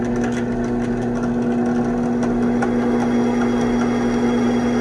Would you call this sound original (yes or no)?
yes